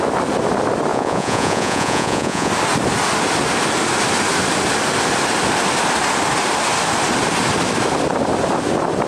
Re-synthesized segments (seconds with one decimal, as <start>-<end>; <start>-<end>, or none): 0.9-2.5